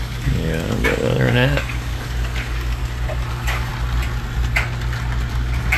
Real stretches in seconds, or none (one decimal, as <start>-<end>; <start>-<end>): 2.8-3.3; 3.7-5.3